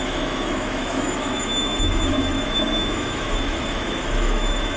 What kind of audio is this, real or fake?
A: fake